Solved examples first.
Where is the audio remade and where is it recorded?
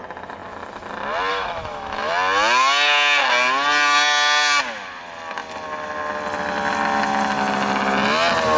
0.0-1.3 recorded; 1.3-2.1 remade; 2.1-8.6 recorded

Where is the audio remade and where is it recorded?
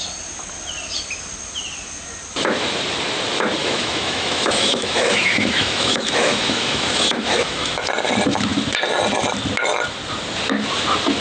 0.0-3.6 recorded; 3.6-7.9 remade; 7.9-11.2 recorded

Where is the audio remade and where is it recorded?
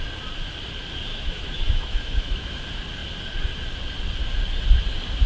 0.0-1.1 recorded; 1.1-2.6 remade; 2.6-5.3 recorded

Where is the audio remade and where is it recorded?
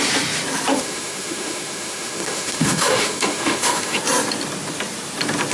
0.0-0.7 recorded; 0.7-4.0 remade; 4.0-5.5 recorded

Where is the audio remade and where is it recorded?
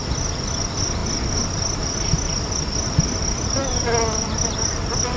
0.0-5.2 recorded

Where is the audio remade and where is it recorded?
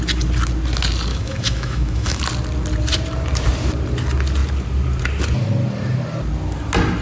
0.0-1.1 recorded; 1.1-2.2 remade; 2.2-7.0 recorded